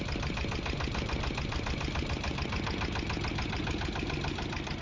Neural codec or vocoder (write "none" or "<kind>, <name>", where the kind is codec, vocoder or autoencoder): none